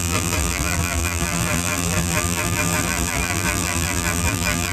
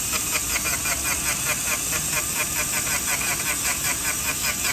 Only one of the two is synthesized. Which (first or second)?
first